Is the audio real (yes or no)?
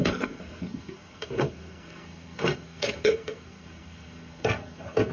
no